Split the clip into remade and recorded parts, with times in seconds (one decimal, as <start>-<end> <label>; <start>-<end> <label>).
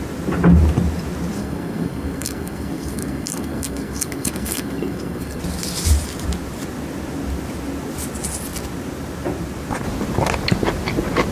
0.0-1.4 recorded; 1.4-5.4 remade; 5.4-11.3 recorded